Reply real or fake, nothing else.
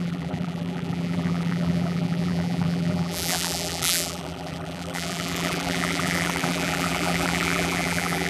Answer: fake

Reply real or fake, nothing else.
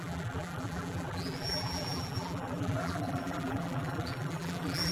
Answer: fake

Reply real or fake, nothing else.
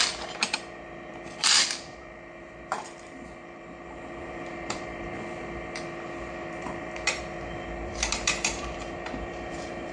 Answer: fake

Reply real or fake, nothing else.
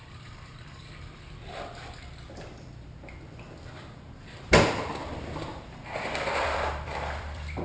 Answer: fake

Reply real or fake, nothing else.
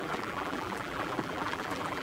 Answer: fake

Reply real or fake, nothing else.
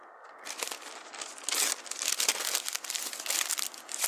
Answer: real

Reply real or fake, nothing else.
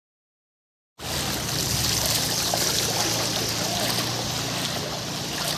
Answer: real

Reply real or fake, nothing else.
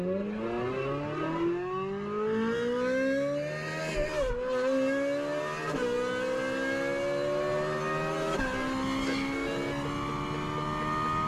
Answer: real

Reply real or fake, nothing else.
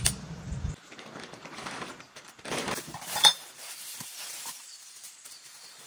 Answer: fake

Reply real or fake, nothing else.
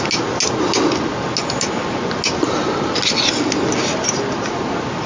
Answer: real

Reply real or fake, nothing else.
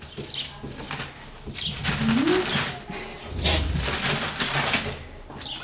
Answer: real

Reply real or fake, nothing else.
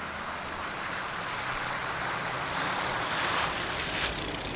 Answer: fake